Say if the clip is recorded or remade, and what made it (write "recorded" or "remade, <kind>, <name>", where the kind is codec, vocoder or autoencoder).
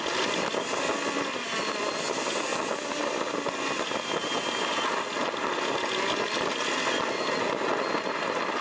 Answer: recorded